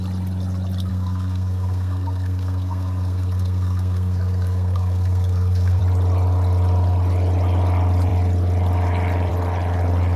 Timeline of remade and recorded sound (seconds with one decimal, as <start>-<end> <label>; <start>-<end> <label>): 0.0-0.9 recorded; 0.9-5.8 remade; 5.8-10.2 recorded